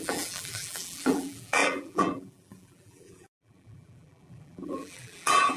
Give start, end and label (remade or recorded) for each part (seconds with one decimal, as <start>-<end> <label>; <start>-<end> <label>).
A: 0.0-5.6 remade